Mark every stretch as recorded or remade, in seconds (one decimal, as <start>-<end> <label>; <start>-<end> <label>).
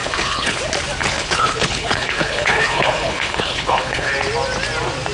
0.0-0.6 remade; 0.6-1.0 recorded; 1.0-4.1 remade; 4.1-5.1 recorded